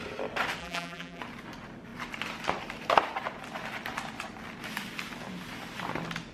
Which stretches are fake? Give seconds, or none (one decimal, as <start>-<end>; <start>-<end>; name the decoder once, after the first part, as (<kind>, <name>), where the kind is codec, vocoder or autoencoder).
0.6-1.2 (vocoder, BigVGAN v2)